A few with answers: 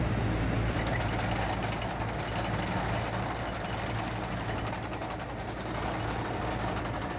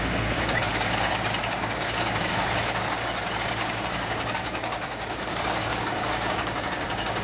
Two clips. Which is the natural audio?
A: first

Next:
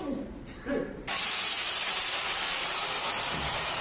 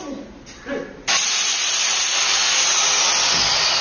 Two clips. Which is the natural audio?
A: second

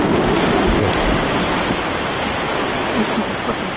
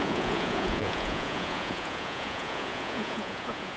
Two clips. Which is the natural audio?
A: first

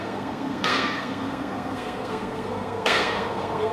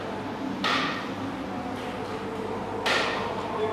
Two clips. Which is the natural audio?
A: second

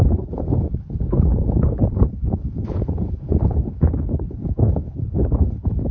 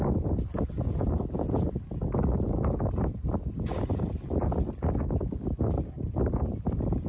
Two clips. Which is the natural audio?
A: second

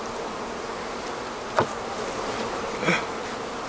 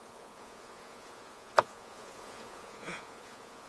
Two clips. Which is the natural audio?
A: first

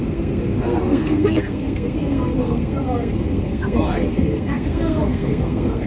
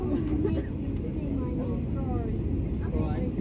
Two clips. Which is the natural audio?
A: second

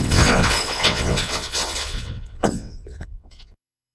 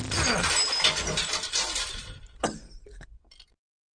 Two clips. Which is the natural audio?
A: second